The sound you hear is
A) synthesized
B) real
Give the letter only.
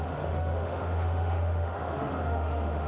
A